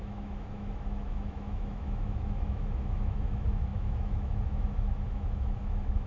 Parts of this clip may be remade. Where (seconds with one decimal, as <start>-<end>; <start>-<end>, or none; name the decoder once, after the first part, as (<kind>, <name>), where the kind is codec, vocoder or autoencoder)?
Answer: 0.0-6.1 (autoencoder, DAC-VAE)